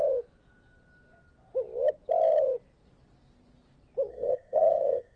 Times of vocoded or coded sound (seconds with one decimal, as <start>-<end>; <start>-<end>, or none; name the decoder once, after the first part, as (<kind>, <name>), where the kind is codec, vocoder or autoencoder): 4.1-5.2 (codec, SNAC)

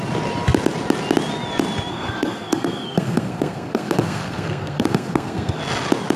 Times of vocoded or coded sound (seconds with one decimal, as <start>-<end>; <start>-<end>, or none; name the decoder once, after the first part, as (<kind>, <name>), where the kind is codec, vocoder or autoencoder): 1.9-5.6 (codec, SNAC)

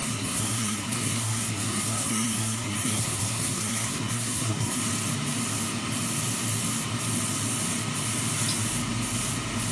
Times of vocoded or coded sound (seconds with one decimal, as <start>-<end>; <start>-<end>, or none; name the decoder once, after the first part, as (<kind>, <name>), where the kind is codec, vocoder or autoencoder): 0.0-4.8 (codec, SNAC)

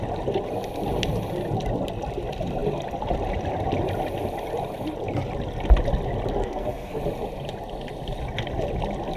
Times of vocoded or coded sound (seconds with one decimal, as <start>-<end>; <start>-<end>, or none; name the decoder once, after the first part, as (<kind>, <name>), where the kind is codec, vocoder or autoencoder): 6.4-7.0 (codec, SNAC)

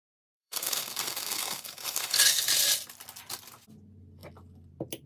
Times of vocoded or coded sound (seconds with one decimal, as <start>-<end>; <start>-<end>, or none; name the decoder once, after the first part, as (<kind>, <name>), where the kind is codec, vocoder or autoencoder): 0.0-2.4 (codec, SNAC)

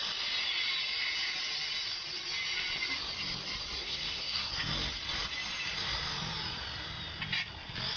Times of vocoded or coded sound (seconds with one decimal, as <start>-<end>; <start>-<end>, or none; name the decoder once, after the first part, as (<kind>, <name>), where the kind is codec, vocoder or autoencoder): 3.8-4.5 (codec, SNAC)